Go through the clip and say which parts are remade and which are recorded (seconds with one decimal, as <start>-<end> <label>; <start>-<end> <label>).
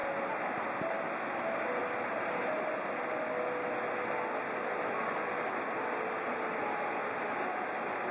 0.0-8.1 recorded